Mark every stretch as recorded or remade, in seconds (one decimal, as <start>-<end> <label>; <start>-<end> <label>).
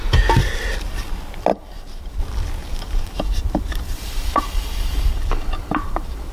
0.0-1.5 recorded; 1.5-2.2 remade; 2.2-2.6 recorded; 2.6-6.3 remade